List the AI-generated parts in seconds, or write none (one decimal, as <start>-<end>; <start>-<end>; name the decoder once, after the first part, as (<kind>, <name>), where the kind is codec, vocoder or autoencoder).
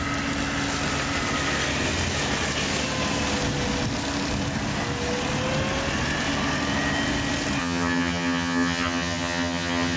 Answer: 7.6-10.0 (vocoder, HiFi-GAN)